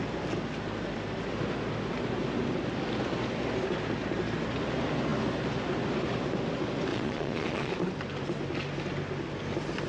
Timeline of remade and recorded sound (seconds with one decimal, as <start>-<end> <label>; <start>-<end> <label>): 0.0-6.9 recorded; 6.9-7.7 remade; 7.7-9.9 recorded